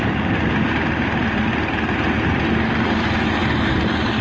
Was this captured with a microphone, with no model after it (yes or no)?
yes